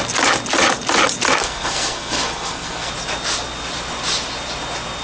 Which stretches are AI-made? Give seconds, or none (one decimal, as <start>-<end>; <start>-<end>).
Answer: 1.4-2.9